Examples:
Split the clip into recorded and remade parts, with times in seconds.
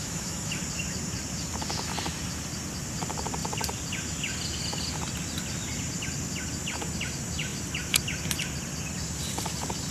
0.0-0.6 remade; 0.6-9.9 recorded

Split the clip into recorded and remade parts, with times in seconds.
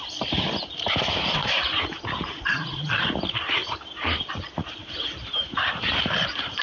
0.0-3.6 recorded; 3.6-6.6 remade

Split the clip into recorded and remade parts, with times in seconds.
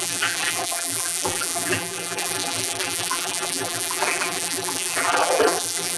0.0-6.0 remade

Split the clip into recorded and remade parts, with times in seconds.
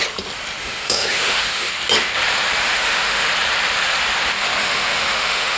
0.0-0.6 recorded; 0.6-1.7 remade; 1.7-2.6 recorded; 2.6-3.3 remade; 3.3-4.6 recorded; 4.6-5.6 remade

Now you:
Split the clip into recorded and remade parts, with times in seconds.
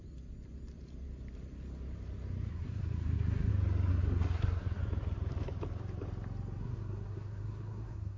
0.0-2.5 recorded; 2.5-3.5 remade; 3.5-3.9 recorded; 3.9-4.8 remade; 4.8-6.6 recorded; 6.6-8.2 remade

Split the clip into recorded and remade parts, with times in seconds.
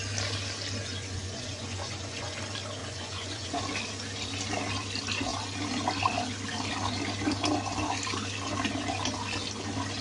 0.0-0.8 recorded; 0.8-2.4 remade; 2.4-2.8 recorded; 2.8-3.6 remade; 3.6-10.0 recorded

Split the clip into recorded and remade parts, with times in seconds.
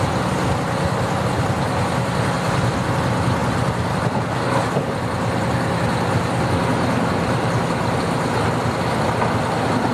0.0-9.9 recorded